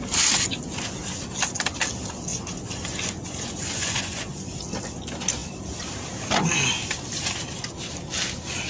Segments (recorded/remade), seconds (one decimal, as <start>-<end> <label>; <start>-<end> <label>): 0.0-2.3 recorded; 2.3-4.6 remade; 4.6-8.7 recorded